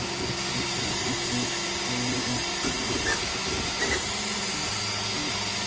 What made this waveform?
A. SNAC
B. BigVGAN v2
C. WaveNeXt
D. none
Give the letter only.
D